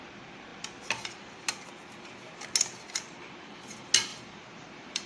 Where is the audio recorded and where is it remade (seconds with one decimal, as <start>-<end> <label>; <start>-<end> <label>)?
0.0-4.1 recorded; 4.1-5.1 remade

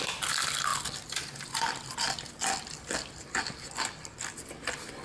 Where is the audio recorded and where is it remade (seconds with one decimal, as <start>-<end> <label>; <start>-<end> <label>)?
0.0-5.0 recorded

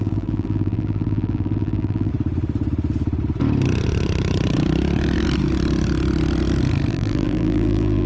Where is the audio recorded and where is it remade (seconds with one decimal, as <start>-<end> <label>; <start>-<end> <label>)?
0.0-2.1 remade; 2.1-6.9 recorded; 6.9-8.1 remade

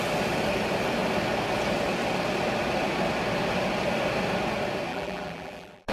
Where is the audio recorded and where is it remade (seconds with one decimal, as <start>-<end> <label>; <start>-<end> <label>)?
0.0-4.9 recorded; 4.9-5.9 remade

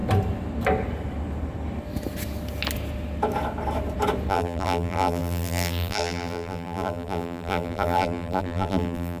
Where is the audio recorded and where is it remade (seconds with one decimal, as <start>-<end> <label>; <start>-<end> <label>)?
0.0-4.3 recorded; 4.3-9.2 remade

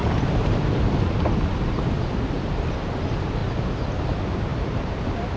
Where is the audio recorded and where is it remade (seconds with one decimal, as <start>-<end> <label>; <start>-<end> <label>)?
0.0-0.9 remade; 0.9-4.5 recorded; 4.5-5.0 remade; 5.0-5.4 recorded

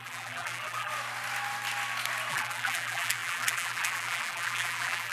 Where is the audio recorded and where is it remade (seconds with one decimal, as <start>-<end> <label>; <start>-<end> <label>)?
0.0-0.9 remade; 0.9-2.3 recorded; 2.3-5.1 remade